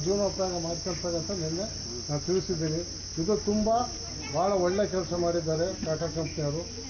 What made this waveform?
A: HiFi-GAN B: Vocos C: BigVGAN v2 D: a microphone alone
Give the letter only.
D